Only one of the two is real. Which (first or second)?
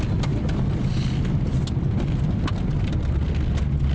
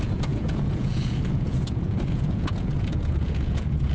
first